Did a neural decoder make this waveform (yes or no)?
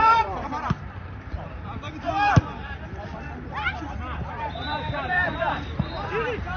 yes